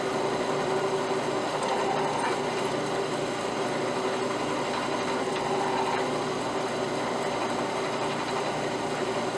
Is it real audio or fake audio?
real